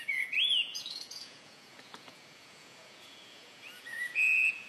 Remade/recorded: remade